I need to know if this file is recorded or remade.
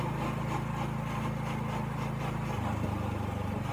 recorded